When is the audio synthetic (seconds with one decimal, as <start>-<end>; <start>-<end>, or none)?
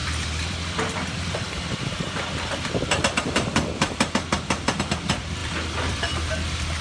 0.0-4.1; 5.4-6.3